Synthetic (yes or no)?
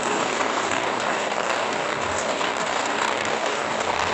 yes